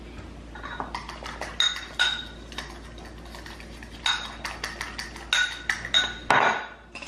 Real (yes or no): yes